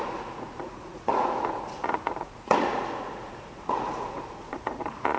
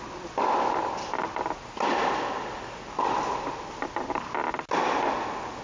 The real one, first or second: second